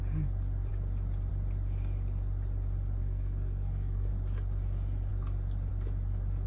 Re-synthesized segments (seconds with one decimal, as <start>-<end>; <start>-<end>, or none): 3.0-4.1